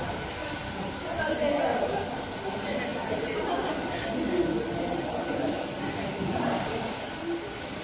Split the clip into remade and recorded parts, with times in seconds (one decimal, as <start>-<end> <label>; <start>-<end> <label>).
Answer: 0.0-0.4 recorded; 0.4-1.2 remade; 1.2-7.8 recorded